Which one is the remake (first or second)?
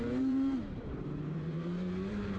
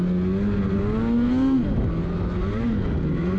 first